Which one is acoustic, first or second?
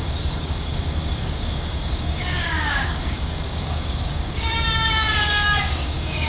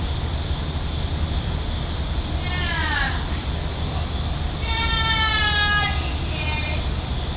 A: second